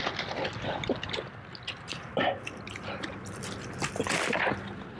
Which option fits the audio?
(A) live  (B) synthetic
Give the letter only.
A